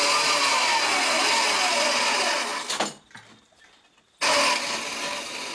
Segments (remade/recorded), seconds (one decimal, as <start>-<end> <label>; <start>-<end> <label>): 0.0-5.5 recorded